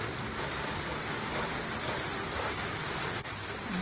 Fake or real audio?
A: real